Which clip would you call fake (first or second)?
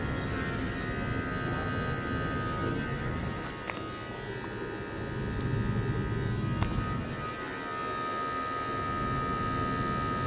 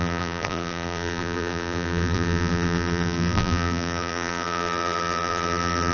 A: second